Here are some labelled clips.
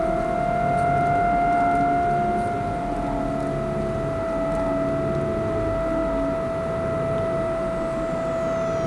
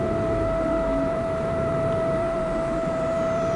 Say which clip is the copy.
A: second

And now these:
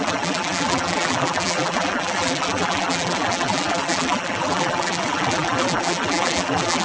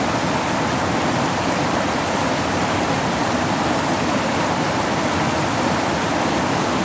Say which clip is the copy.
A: first